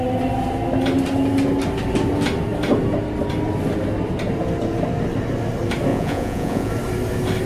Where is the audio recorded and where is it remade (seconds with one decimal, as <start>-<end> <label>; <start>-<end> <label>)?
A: 0.0-5.9 recorded; 5.9-6.7 remade; 6.7-7.5 recorded